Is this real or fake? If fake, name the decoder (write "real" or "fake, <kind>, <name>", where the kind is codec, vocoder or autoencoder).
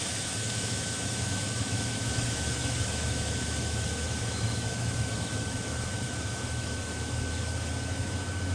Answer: fake, autoencoder, DAC-VAE